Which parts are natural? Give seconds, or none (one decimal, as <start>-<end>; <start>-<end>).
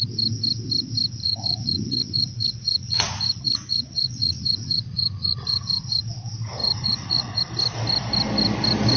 0.0-1.2; 6.1-6.6; 7.4-9.0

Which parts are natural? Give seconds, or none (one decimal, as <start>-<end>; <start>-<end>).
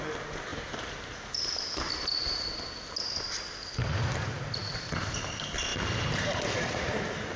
0.0-0.5; 1.9-4.6; 5.3-5.7; 6.8-7.4